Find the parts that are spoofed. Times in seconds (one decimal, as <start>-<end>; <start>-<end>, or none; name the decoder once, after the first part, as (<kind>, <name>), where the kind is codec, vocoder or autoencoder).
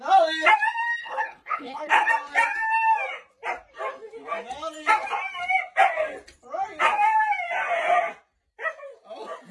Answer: 1.0-2.1 (codec, HILCodec)